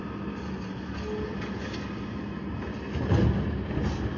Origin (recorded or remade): recorded